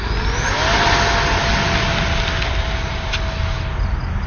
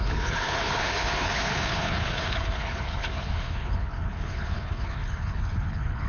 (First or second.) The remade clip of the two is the second